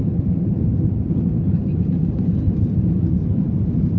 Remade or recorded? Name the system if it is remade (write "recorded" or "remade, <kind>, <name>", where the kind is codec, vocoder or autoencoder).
remade, vocoder, BigVGAN v2